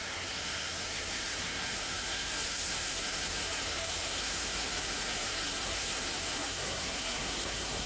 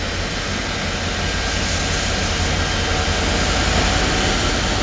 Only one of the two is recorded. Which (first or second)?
second